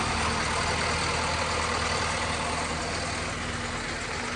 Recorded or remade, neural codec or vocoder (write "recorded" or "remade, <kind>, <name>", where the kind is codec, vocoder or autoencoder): recorded